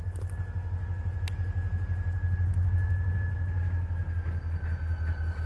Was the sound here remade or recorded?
recorded